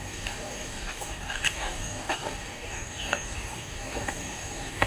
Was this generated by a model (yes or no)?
yes